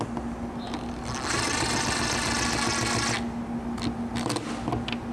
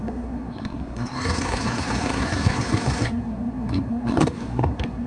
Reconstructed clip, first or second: second